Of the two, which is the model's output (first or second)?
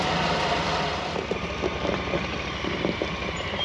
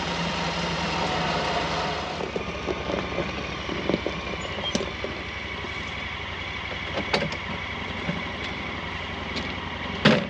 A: first